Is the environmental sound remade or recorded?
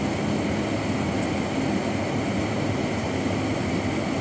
recorded